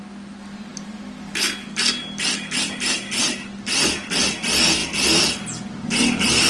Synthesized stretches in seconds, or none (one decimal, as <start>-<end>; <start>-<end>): none